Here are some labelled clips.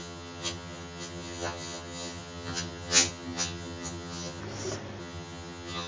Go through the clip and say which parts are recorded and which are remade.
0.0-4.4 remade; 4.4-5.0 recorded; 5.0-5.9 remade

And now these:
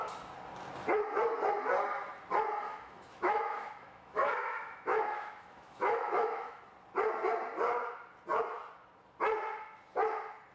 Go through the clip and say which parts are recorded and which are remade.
0.0-2.7 recorded; 2.7-6.6 remade; 6.6-10.5 recorded

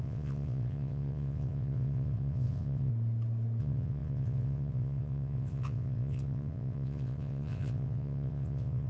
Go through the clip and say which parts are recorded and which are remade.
0.0-2.9 remade; 2.9-3.6 recorded; 3.6-8.9 remade

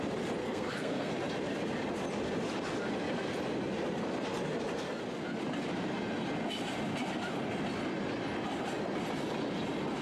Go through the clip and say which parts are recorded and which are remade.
0.0-0.4 recorded; 0.4-1.1 remade; 1.1-10.0 recorded

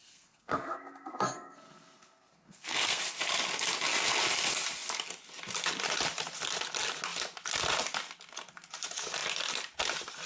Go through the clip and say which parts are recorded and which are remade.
0.0-3.0 remade; 3.0-10.3 recorded

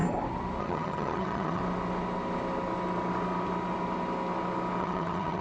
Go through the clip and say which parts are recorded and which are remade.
0.0-0.6 recorded; 0.6-1.6 remade; 1.6-4.8 recorded; 4.8-5.4 remade

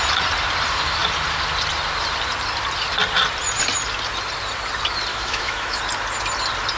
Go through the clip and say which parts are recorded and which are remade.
0.0-5.1 recorded; 5.1-5.8 remade; 5.8-6.8 recorded